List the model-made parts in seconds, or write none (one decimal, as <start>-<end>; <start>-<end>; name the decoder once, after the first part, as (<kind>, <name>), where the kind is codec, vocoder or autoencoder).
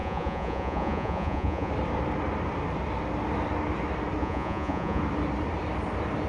0.0-1.7 (vocoder, Vocos); 4.2-5.0